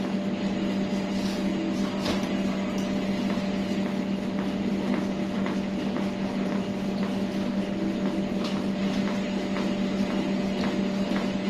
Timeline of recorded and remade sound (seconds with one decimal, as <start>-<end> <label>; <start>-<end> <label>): 0.0-11.5 recorded